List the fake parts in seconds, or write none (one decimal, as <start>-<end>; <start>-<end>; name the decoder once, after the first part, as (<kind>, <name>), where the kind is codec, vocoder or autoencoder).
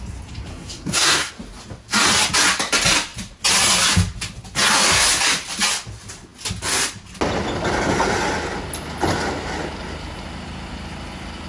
0.5-1.3 (codec, SNAC)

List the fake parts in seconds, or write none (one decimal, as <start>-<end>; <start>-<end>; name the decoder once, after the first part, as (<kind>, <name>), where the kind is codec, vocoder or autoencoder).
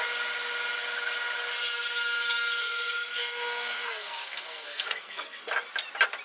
2.6-5.5 (codec, SNAC)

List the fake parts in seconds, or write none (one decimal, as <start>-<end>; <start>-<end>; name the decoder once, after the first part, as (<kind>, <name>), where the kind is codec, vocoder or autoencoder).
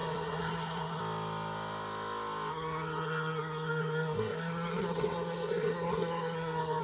0.0-1.0 (codec, SNAC); 2.5-6.8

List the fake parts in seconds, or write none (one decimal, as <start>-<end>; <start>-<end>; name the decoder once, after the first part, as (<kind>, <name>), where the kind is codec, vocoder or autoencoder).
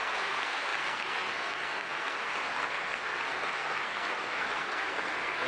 0.0-5.5 (codec, SNAC)